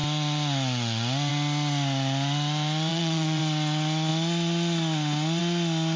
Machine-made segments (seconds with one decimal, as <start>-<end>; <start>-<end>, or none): 2.9-3.4